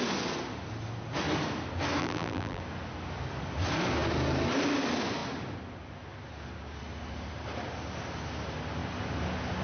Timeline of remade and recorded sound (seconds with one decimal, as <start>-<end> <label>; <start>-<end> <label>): 0.0-2.0 recorded; 2.0-2.6 remade; 2.6-9.6 recorded